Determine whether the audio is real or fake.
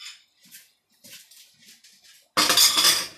real